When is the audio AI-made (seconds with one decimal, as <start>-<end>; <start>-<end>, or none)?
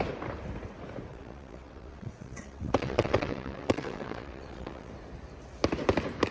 1.1-4.9